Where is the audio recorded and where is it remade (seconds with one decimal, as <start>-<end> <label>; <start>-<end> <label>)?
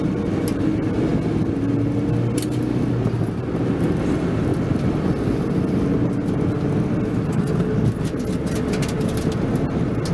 0.0-10.1 recorded